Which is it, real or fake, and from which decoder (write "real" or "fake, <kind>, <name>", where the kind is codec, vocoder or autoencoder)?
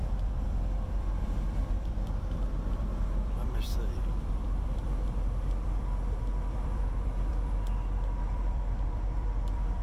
fake, vocoder, BigVGAN v2